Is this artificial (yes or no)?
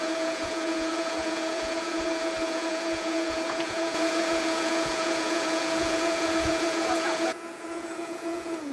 yes